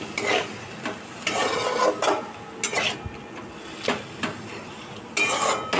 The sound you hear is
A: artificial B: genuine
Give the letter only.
B